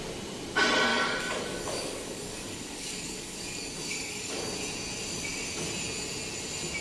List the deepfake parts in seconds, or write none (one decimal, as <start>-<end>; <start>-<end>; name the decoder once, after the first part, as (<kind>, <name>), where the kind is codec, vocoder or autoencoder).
0.9-4.4 (codec, DAC)